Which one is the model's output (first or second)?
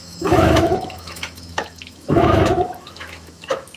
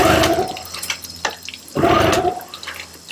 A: first